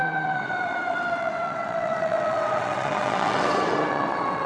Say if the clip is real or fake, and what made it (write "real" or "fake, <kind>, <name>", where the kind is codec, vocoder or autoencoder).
fake, vocoder, WaveNeXt